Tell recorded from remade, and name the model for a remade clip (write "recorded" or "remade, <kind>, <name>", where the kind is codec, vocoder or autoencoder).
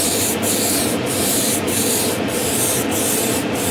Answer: recorded